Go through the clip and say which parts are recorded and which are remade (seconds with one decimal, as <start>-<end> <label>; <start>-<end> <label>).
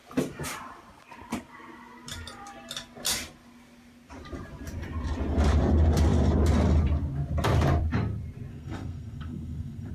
0.0-8.5 recorded; 8.5-9.9 remade